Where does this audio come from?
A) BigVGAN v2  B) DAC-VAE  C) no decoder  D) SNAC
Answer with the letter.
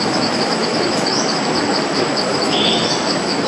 B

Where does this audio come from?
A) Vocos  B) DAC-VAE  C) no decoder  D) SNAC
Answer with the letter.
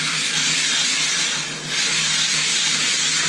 C